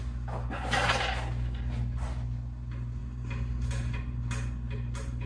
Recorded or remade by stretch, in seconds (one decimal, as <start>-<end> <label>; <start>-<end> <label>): 0.0-5.3 recorded